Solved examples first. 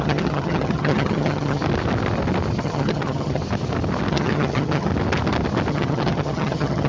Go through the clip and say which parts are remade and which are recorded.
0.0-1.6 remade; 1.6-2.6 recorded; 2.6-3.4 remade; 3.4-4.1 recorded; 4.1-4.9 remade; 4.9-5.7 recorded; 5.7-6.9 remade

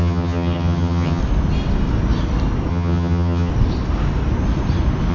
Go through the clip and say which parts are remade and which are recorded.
0.0-1.2 remade; 1.2-2.7 recorded; 2.7-3.5 remade; 3.5-5.1 recorded

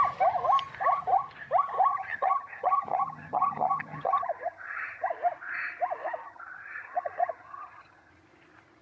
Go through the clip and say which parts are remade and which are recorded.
0.0-1.9 recorded; 1.9-5.1 remade; 5.1-6.2 recorded; 6.2-8.1 remade; 8.1-8.8 recorded

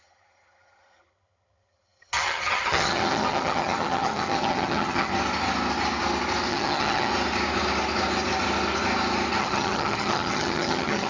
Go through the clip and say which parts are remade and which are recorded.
0.0-5.1 remade; 5.1-6.5 recorded; 6.5-7.1 remade; 7.1-9.4 recorded; 9.4-11.1 remade

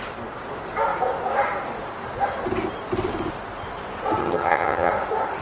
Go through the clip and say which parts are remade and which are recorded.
0.0-4.2 recorded; 4.2-4.9 remade; 4.9-5.4 recorded

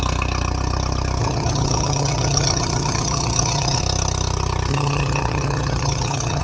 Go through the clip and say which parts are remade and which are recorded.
0.0-1.2 recorded; 1.2-3.8 remade; 3.8-4.7 recorded; 4.7-6.4 remade